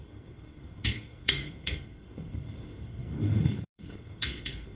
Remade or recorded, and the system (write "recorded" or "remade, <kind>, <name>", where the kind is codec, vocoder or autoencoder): remade, codec, SNAC